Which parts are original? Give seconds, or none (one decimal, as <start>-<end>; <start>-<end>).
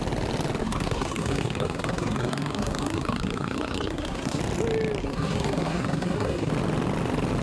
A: 0.0-0.6; 4.4-5.0; 6.5-7.4